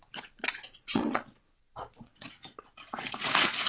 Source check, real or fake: fake